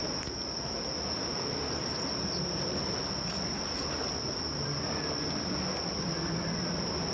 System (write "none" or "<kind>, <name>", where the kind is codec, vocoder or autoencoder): none